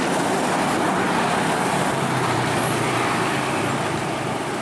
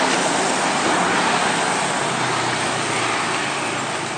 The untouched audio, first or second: second